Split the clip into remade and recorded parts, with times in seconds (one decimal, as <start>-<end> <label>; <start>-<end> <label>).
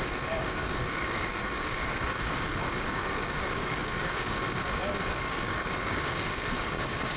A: 0.0-7.2 remade